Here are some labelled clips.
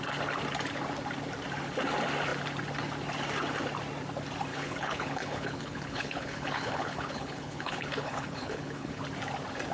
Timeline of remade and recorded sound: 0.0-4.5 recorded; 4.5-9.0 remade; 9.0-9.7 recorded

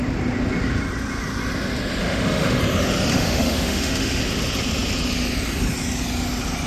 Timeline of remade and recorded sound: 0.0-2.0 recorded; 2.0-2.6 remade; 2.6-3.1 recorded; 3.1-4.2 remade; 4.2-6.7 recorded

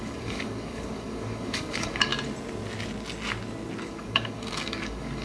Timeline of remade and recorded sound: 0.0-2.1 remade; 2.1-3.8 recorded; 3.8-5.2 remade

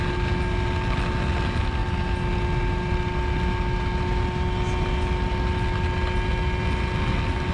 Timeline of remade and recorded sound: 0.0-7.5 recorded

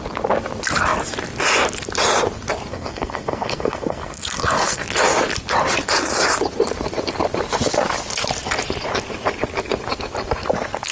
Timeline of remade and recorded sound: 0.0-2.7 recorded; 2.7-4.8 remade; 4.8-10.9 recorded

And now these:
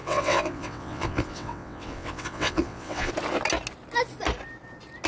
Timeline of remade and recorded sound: 0.0-3.1 remade; 3.1-5.1 recorded

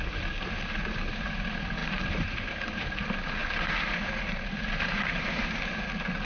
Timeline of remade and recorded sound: 0.0-1.8 recorded; 1.8-3.0 remade; 3.0-3.4 recorded; 3.4-5.6 remade; 5.6-6.2 recorded